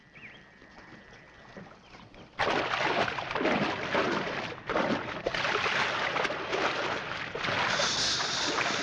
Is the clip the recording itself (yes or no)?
yes